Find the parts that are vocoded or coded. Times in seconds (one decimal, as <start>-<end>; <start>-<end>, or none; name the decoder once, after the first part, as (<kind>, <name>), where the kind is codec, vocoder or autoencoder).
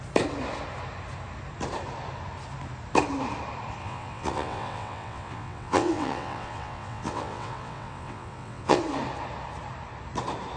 3.8-8.8 (vocoder, WaveNeXt)